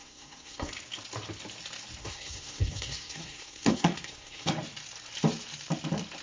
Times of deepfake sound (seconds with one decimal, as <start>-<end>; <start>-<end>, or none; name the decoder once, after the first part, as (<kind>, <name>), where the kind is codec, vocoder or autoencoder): 0.0-0.7 (codec, SNAC); 2.0-4.5

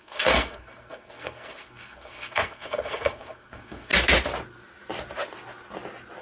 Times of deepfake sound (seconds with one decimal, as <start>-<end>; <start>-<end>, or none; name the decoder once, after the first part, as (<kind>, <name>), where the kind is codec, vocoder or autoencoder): 0.0-3.9 (codec, SNAC)

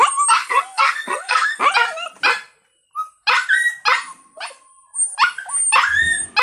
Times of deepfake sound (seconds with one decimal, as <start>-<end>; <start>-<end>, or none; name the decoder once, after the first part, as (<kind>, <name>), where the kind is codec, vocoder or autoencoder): 0.4-1.6 (codec, SNAC)

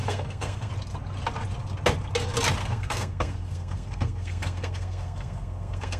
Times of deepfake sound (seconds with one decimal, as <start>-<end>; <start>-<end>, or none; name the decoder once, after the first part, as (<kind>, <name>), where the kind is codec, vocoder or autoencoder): 0.0-0.7 (codec, SNAC); 2.6-6.0

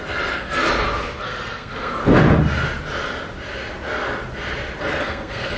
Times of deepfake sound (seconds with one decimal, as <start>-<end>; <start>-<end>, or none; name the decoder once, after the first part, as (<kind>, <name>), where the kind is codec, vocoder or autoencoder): 0.0-0.6 (codec, SNAC); 1.2-2.0; 4.8-5.6

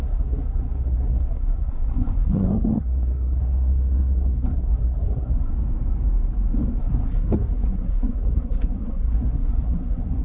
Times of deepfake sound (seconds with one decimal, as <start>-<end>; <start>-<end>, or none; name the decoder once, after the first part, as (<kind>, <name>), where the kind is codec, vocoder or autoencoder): 0.0-5.5 (codec, SNAC); 6.8-10.2

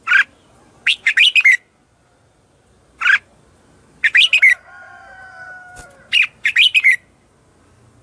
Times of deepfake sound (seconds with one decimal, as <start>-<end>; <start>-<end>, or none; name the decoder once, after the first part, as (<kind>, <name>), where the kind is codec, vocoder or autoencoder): none

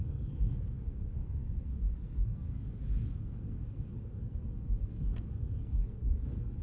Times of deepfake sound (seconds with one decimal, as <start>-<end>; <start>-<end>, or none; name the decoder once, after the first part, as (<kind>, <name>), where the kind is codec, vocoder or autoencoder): 0.0-6.6 (codec, SNAC)